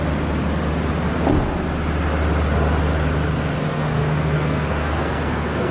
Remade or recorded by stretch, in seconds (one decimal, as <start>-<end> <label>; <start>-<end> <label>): 0.0-3.7 recorded; 3.7-5.7 remade